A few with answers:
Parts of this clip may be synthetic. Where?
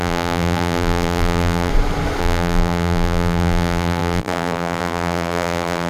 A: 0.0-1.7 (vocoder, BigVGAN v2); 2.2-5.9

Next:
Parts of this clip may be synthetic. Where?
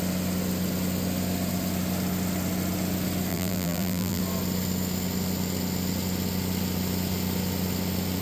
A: 3.3-4.2 (vocoder, BigVGAN v2)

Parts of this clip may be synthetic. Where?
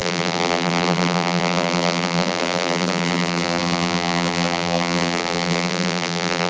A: 0.0-6.5 (vocoder, BigVGAN v2)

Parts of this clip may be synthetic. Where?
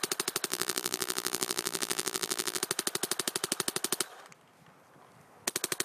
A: 0.5-2.6 (vocoder, BigVGAN v2)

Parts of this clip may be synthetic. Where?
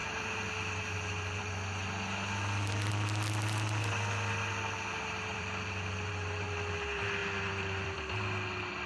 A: 5.3-6.1 (vocoder, BigVGAN v2); 7.2-8.1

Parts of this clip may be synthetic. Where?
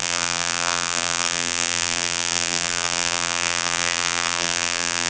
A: 0.0-5.1 (vocoder, BigVGAN v2)